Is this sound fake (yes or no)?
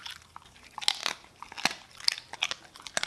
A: no